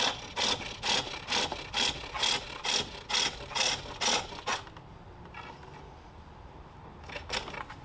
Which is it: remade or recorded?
recorded